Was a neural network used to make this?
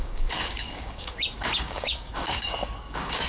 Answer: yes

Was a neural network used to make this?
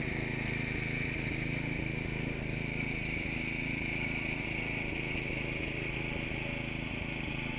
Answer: no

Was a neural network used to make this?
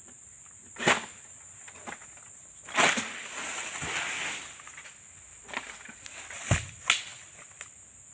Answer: no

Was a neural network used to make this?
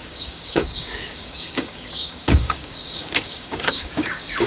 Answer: yes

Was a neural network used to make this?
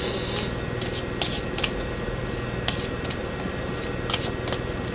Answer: no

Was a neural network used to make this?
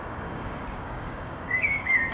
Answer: yes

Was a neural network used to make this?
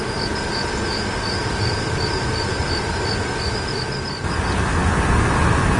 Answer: no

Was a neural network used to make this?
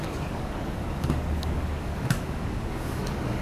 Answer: yes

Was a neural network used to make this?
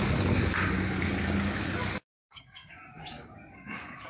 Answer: yes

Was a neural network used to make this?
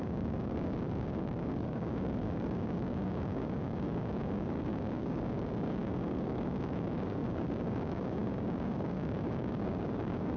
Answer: yes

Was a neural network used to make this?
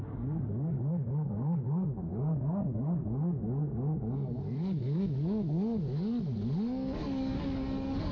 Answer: yes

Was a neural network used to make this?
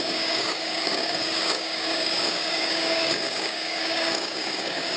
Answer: yes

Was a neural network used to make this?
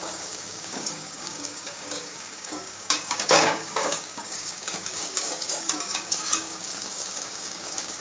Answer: yes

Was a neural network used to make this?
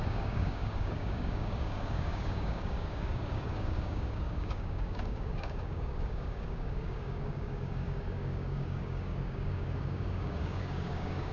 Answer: yes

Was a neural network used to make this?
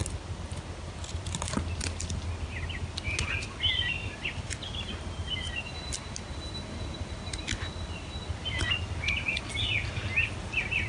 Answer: no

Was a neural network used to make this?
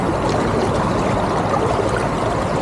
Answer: no